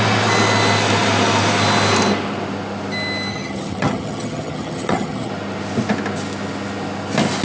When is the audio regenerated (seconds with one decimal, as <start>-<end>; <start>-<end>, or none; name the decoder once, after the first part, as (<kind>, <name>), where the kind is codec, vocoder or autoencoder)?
3.3-5.3 (vocoder, HiFi-GAN)